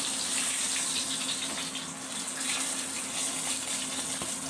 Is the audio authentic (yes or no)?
yes